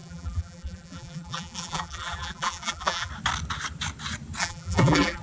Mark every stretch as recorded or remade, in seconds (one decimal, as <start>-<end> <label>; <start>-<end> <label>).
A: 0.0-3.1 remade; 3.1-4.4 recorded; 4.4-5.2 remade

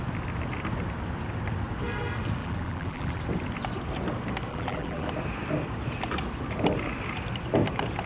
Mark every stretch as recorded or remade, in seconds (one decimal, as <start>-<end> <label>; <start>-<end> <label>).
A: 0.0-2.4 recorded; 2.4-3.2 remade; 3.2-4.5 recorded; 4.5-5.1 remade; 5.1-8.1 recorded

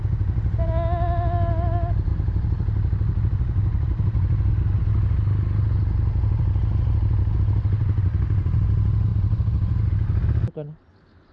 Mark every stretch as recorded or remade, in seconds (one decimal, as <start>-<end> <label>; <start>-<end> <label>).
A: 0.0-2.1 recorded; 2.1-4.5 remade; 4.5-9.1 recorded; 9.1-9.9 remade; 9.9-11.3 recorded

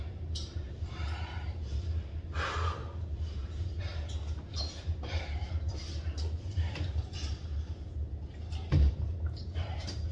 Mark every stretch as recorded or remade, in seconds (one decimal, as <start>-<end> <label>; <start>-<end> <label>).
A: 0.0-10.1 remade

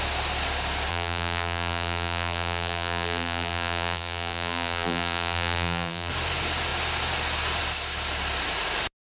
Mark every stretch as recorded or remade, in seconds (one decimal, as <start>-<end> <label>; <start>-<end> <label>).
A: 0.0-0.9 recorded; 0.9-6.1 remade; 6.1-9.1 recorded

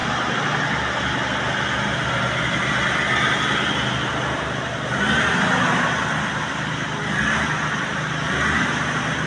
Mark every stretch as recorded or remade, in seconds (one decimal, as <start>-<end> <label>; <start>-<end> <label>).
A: 0.0-9.3 recorded

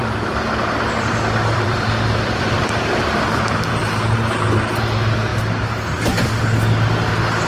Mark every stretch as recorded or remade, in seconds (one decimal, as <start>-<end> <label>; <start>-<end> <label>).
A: 0.0-3.8 remade; 3.8-7.5 recorded

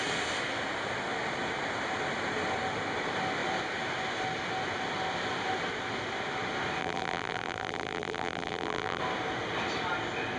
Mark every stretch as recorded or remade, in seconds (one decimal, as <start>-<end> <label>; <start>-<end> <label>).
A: 0.0-6.8 recorded; 6.8-9.0 remade; 9.0-10.4 recorded